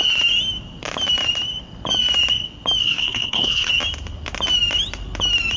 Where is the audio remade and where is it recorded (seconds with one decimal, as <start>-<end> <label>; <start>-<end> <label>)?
0.0-2.8 recorded; 2.8-3.7 remade; 3.7-5.6 recorded